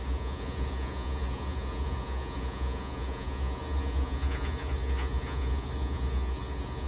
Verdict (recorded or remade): remade